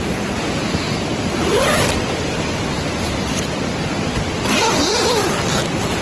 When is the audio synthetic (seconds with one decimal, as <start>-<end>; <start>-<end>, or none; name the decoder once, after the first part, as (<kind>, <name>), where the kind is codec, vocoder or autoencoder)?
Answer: 1.1-4.7 (vocoder, BigVGAN v2)